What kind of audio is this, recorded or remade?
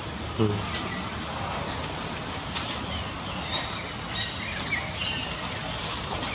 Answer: recorded